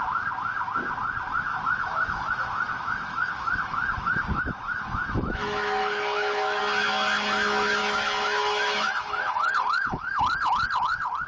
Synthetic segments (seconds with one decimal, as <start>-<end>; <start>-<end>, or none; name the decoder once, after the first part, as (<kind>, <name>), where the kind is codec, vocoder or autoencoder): 1.5-6.6 (autoencoder, DAC-VAE); 7.8-10.2